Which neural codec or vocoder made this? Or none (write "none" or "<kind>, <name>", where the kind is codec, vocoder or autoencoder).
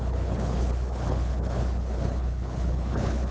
codec, HILCodec